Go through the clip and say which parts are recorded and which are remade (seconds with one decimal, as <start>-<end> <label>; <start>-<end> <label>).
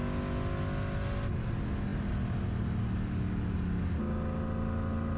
0.0-5.2 recorded